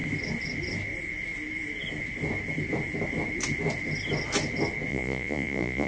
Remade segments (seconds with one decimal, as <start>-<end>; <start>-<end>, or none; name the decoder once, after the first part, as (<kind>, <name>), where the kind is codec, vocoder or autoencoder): 4.9-5.9 (vocoder, Vocos)